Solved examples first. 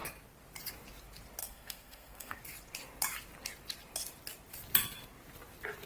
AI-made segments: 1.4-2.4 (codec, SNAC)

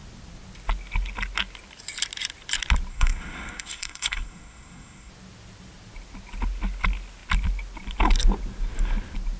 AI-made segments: 2.9-5.1 (codec, SNAC)